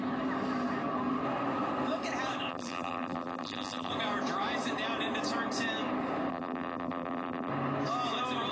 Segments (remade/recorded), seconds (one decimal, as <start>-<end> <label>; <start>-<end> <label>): 0.0-2.5 recorded; 2.5-3.9 remade; 3.9-6.3 recorded; 6.3-7.5 remade; 7.5-8.5 recorded

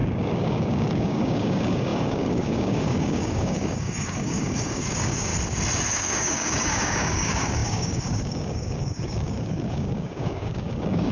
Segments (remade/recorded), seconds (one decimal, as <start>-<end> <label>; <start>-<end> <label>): 0.0-5.3 remade; 5.3-5.9 recorded; 5.9-11.1 remade